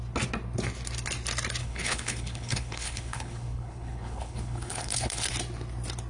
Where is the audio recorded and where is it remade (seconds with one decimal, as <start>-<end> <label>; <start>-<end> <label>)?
0.0-1.6 recorded; 1.6-5.3 remade; 5.3-6.1 recorded

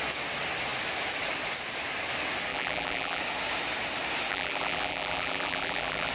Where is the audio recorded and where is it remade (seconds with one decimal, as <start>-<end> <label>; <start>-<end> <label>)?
0.0-2.5 recorded; 2.5-3.2 remade; 3.2-4.3 recorded; 4.3-6.1 remade